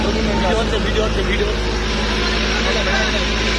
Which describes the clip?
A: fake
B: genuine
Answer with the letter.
B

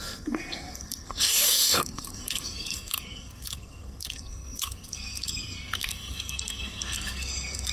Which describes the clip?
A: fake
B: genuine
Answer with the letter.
A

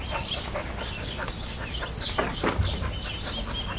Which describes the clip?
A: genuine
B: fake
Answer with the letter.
A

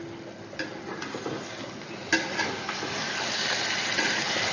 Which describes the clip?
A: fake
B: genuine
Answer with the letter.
B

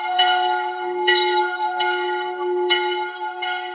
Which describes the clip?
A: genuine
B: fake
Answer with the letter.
B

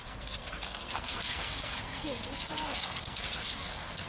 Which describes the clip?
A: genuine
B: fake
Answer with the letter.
B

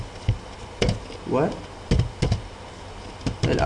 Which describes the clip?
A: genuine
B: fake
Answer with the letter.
A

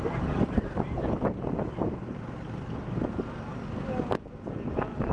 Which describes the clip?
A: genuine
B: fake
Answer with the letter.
A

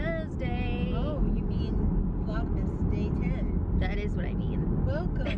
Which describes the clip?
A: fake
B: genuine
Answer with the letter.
B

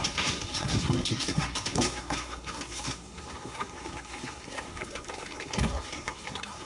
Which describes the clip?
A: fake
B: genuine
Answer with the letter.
A